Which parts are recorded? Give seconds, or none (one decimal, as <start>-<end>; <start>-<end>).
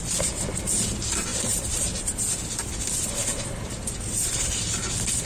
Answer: 0.0-1.3; 2.2-5.3